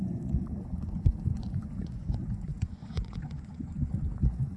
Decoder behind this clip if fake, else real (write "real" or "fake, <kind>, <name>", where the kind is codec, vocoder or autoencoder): fake, vocoder, Vocos